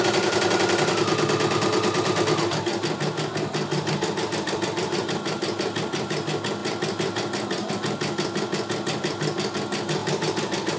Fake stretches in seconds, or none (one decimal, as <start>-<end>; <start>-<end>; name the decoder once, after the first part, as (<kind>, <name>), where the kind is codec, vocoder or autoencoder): 2.7-5.4 (vocoder, BigVGAN v2); 10.0-10.8